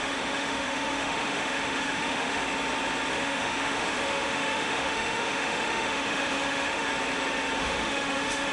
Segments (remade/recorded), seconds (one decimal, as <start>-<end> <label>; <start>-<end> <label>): 0.0-2.4 remade; 2.4-3.1 recorded; 3.1-6.9 remade; 6.9-7.6 recorded; 7.6-8.5 remade